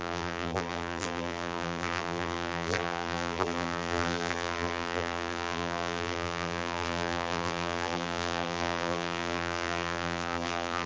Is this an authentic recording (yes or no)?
no